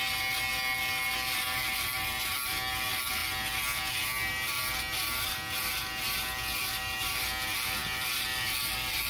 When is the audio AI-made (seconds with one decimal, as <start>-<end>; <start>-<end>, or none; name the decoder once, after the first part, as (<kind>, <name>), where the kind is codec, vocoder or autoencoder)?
none